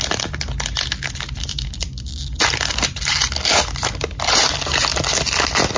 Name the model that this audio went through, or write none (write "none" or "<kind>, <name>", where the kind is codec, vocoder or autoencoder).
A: none